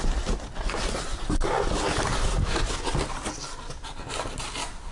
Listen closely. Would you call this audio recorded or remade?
recorded